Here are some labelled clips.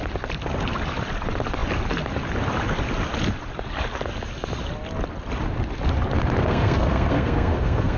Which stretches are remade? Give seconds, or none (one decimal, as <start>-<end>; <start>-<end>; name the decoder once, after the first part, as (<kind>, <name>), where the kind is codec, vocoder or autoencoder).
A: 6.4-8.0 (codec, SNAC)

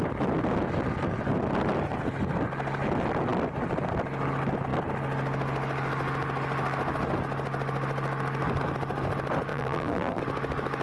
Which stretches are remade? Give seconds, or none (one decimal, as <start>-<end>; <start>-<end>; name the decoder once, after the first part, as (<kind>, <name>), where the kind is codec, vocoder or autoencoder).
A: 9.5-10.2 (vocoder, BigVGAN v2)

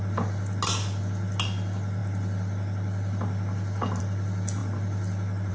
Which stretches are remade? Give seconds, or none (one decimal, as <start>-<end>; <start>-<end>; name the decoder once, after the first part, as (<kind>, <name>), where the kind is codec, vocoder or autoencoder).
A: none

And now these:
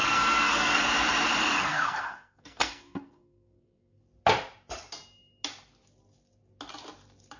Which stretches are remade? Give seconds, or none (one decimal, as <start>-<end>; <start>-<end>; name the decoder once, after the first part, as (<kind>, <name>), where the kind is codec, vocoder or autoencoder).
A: 0.0-0.8 (codec, SNAC); 1.4-4.0